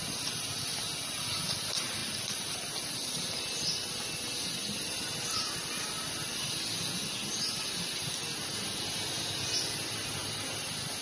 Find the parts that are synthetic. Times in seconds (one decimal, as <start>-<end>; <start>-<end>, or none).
none